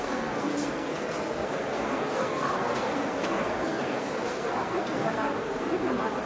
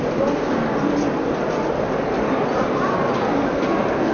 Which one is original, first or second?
second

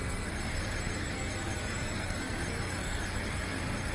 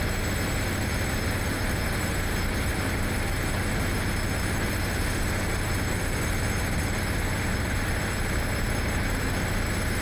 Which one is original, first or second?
second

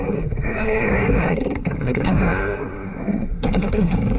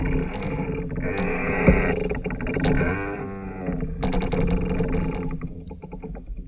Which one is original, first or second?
second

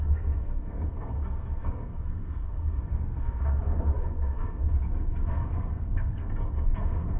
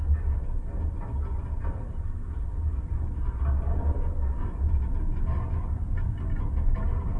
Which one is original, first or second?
second